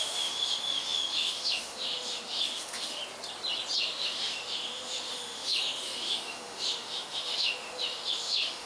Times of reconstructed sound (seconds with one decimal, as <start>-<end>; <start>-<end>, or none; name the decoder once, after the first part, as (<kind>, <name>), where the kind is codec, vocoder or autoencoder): 0.0-3.0 (autoencoder, DAC-VAE); 3.8-8.7